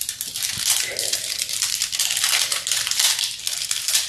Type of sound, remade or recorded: recorded